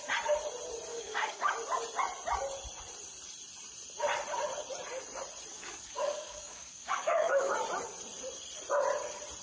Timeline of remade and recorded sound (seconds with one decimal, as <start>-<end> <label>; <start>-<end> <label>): 0.0-0.9 recorded; 0.9-1.5 remade; 1.5-5.5 recorded; 5.5-7.5 remade; 7.5-9.4 recorded